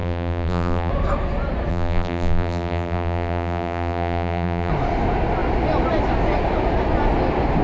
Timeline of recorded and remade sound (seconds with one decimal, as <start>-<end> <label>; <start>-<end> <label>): 0.0-0.9 remade; 0.9-1.7 recorded; 1.7-4.7 remade; 4.7-7.6 recorded